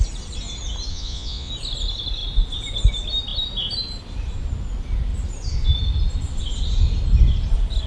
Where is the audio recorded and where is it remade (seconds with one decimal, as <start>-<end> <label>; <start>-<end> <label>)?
0.0-0.9 recorded; 0.9-1.5 remade; 1.5-7.9 recorded